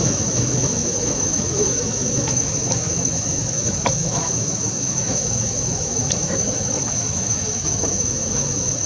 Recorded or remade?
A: remade